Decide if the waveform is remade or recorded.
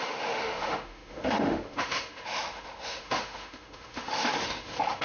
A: remade